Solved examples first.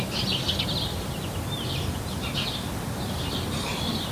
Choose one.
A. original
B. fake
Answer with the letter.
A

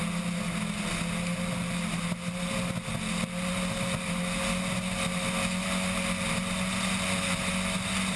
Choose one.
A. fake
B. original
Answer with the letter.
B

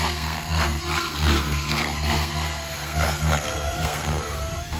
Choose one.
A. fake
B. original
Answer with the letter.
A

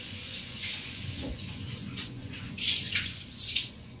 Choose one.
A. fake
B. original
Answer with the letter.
A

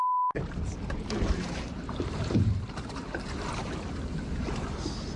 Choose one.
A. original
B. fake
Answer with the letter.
B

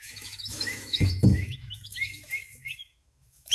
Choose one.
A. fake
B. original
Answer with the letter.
A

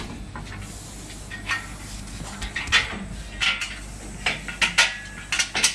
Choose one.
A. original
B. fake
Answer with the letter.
A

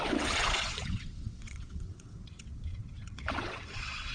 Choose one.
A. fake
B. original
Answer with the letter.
A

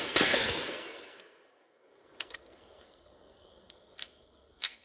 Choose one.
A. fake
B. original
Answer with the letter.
A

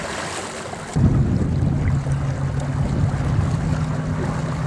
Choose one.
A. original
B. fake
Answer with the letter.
A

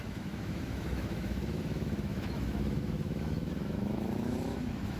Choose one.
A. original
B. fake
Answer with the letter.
B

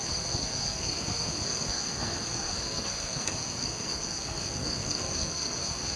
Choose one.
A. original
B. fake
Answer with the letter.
B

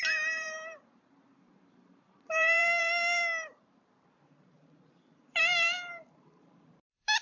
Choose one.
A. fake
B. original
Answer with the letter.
A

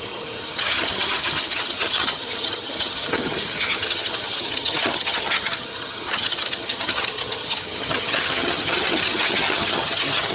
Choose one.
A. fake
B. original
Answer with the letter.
A